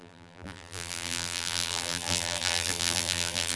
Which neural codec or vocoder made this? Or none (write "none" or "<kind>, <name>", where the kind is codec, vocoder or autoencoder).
vocoder, BigVGAN v2